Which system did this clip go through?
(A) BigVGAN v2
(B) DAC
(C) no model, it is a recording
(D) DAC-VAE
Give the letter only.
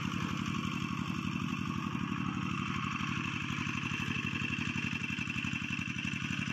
C